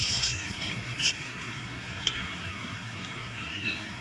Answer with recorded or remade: remade